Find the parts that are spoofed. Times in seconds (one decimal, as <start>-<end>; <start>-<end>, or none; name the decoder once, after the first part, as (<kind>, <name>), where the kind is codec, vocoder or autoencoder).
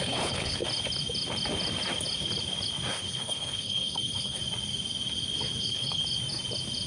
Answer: 0.0-0.6 (codec, HILCodec); 2.9-4.4; 5.6-6.0